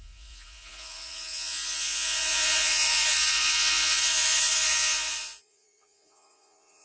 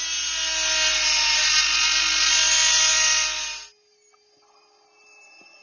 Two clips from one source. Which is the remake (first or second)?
first